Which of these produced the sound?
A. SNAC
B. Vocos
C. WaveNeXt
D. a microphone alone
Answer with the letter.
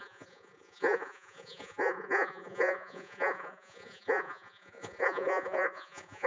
B